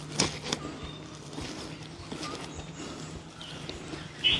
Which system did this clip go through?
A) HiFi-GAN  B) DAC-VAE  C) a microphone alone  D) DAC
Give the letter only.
C